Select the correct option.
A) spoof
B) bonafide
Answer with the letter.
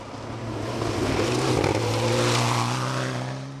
B